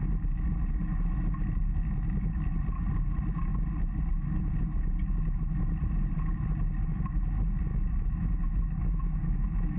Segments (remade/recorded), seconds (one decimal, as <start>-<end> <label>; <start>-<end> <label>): 0.0-7.7 recorded; 7.7-9.8 remade